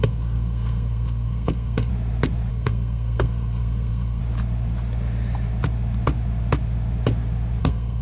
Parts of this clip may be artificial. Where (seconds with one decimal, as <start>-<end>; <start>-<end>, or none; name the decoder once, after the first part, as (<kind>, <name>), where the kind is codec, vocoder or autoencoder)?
0.0-1.9 (codec, SNAC); 2.5-4.2; 7.6-8.0